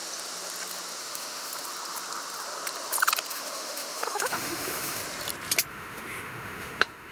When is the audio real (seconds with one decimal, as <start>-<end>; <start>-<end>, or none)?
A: 0.0-1.0; 1.5-3.3; 5.0-5.7